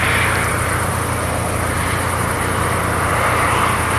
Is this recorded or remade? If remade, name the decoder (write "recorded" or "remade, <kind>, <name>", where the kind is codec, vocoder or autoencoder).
recorded